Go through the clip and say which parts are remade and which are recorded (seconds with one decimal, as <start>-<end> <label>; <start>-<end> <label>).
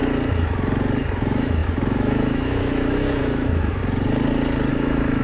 0.0-1.1 recorded; 1.1-3.8 remade; 3.8-4.7 recorded; 4.7-5.2 remade